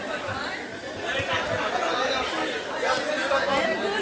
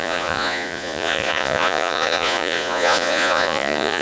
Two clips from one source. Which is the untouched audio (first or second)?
first